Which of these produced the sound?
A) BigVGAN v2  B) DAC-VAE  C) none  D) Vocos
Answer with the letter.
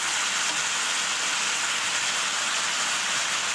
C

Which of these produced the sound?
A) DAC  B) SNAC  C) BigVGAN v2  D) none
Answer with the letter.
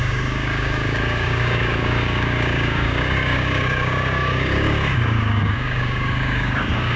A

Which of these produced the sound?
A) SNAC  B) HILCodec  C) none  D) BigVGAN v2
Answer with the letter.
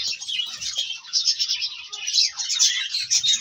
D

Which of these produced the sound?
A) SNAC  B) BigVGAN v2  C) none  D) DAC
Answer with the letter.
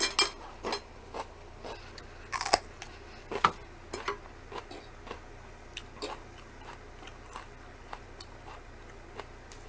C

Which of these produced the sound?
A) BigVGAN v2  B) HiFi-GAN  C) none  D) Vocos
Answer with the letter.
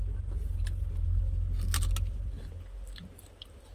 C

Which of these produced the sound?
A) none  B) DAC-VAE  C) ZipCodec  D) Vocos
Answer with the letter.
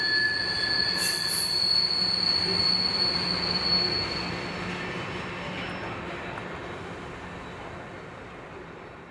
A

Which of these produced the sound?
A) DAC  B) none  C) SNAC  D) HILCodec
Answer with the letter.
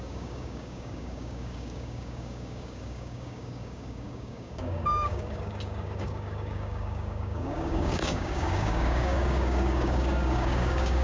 A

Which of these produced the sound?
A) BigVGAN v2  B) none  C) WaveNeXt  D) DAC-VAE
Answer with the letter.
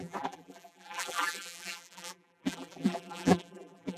A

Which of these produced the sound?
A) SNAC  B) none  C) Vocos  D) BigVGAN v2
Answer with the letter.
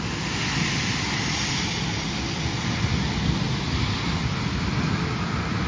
B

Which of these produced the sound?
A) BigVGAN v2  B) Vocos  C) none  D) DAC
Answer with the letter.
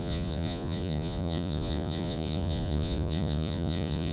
B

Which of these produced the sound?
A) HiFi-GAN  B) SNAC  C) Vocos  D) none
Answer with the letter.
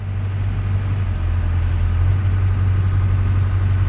D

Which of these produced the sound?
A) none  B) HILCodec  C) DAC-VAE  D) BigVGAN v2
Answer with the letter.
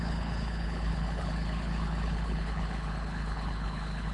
B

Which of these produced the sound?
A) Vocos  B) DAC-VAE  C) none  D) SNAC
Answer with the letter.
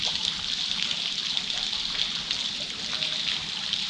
C